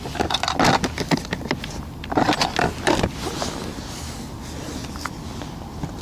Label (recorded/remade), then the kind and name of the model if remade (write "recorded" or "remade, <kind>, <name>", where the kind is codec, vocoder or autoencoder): recorded